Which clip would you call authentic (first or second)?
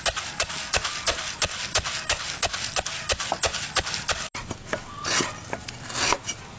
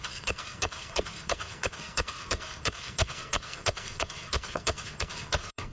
first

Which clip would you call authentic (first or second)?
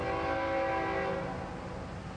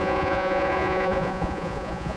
first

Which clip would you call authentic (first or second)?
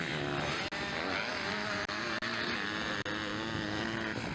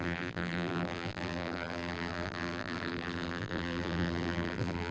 first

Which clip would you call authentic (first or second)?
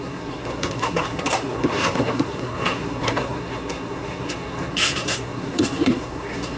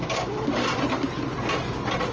second